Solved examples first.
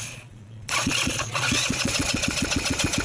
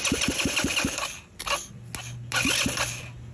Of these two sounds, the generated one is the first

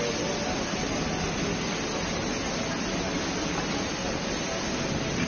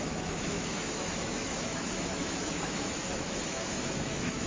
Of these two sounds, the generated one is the second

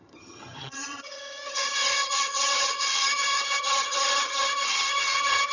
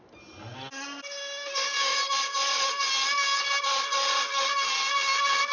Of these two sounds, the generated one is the first